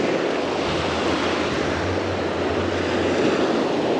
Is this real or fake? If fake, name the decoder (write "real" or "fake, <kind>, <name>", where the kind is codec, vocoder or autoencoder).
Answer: real